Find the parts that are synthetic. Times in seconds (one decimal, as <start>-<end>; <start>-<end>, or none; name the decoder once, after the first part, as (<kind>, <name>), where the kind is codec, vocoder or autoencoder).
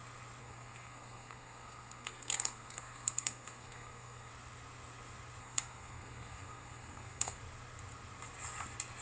0.4-4.3 (codec, SNAC); 5.4-7.4